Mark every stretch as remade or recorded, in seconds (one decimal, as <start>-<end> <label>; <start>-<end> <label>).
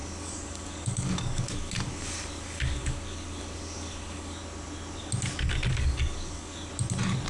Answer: 0.0-4.4 remade; 4.4-5.7 recorded; 5.7-6.7 remade; 6.7-7.3 recorded